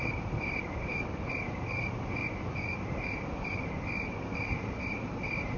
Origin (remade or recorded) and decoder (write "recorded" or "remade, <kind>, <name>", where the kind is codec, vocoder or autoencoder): remade, vocoder, BigVGAN v2